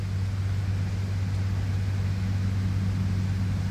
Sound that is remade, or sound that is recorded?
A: recorded